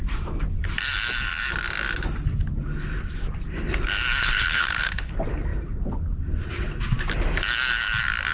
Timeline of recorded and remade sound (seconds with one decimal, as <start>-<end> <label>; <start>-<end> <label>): 0.0-4.2 recorded; 4.2-5.1 remade; 5.1-8.3 recorded